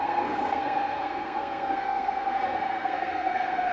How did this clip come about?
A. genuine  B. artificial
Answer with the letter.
B